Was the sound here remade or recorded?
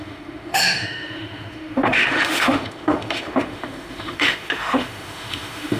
remade